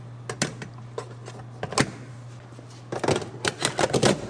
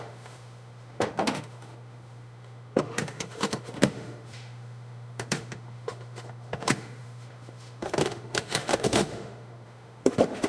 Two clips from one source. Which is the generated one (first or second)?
second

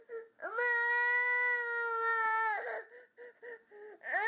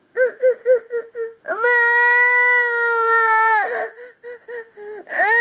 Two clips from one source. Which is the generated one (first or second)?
second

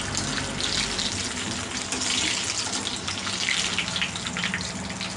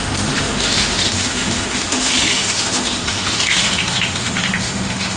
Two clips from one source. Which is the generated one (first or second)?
second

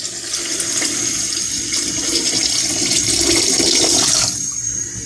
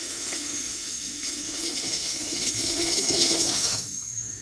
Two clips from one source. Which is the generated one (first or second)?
second